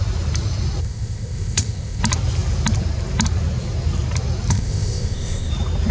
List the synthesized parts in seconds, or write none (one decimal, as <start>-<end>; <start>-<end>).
0.8-2.0; 4.5-5.5